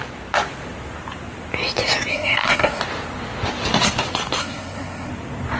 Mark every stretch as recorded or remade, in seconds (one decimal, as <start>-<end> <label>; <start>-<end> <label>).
0.0-2.1 recorded; 2.1-2.8 remade; 2.8-4.4 recorded; 4.4-5.1 remade; 5.1-5.6 recorded